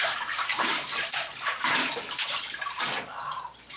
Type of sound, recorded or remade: remade